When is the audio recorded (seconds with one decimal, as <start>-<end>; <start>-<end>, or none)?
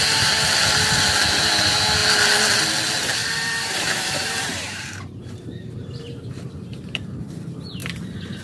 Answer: 0.0-3.2; 7.2-7.8